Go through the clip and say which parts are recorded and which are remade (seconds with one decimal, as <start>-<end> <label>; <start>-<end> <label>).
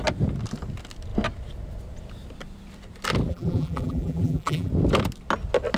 0.0-3.3 recorded; 3.3-4.7 remade; 4.7-5.8 recorded